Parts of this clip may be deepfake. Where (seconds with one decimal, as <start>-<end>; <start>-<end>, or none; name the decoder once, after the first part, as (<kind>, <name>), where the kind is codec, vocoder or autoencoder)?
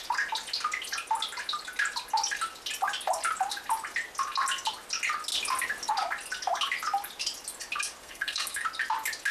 8.0-8.6 (codec, SNAC)